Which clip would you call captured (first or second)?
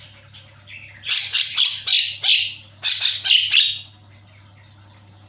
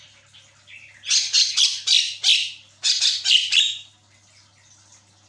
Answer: second